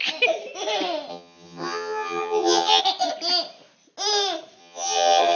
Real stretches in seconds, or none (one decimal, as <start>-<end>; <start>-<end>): 0.0-1.1; 2.8-4.6